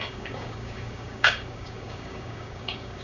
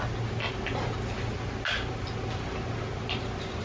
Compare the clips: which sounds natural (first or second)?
second